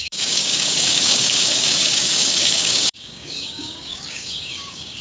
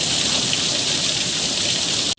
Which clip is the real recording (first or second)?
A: second